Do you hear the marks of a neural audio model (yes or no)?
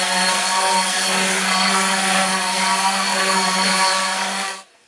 yes